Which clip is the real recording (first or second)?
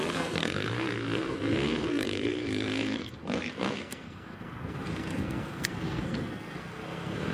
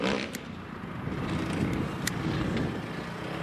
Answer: second